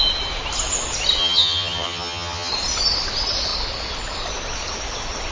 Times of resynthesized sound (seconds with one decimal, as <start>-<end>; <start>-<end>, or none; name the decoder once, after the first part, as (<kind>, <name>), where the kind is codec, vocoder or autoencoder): 1.2-2.5 (vocoder, HiFi-GAN)